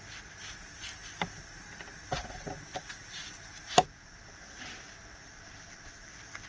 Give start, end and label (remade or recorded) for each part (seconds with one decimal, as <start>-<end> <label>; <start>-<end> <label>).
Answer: 0.0-4.0 recorded; 4.0-6.1 remade; 6.1-6.5 recorded